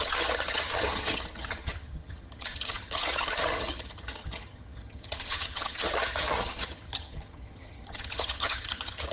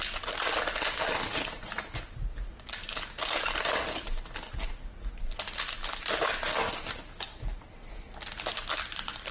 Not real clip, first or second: first